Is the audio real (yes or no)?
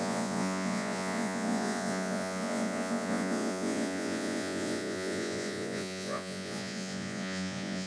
no